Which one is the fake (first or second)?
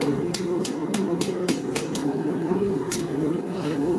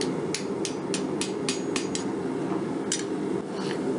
first